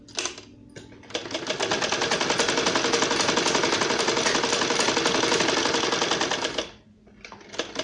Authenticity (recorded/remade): recorded